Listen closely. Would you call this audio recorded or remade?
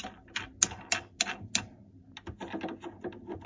recorded